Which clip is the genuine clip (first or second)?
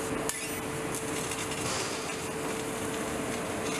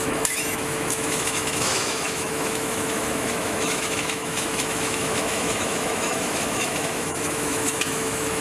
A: first